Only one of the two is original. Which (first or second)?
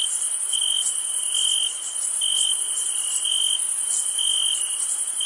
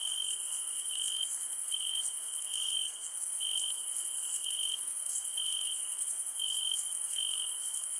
first